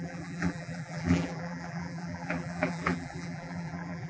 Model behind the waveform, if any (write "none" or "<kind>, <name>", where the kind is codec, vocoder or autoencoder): vocoder, BigVGAN v2